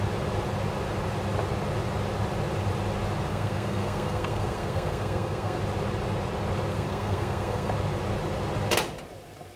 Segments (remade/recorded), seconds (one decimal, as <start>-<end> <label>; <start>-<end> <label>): 0.0-3.3 recorded; 3.3-5.6 remade; 5.6-6.7 recorded; 6.7-7.7 remade; 7.7-9.6 recorded